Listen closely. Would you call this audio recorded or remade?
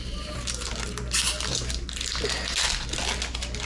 recorded